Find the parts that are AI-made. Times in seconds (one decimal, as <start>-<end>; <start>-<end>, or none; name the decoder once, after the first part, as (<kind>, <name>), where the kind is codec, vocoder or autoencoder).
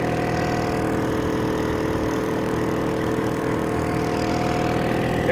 2.0-4.3 (codec, DAC)